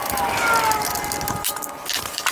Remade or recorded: recorded